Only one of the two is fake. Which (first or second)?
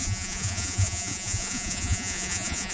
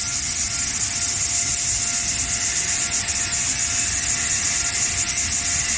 first